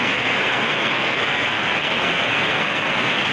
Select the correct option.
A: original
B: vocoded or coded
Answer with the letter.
B